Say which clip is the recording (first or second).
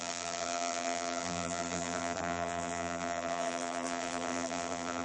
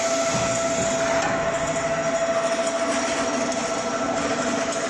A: second